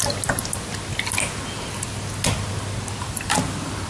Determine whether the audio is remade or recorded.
recorded